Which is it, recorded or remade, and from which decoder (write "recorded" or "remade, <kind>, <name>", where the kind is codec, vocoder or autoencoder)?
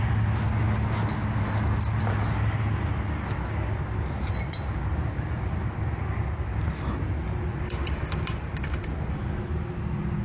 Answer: recorded